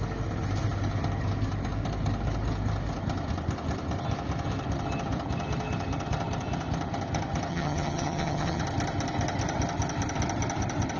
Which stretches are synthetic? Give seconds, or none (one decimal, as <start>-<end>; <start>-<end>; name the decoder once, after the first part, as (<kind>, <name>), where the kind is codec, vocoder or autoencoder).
7.5-8.6 (vocoder, HiFi-GAN)